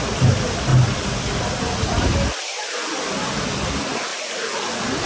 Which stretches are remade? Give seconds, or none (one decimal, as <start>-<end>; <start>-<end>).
none